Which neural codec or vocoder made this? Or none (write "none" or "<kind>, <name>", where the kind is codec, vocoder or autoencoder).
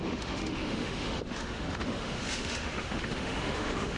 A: autoencoder, DAC-VAE